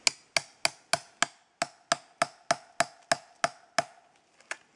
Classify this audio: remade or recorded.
recorded